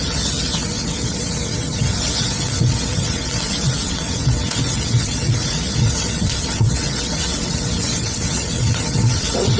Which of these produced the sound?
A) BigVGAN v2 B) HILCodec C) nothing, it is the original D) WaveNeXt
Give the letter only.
D